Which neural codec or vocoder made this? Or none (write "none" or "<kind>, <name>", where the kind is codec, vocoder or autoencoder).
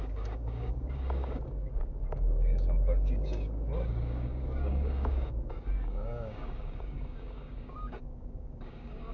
codec, DAC